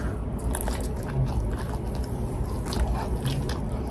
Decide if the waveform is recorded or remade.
recorded